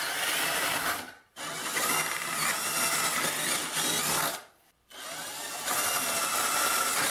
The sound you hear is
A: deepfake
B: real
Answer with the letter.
B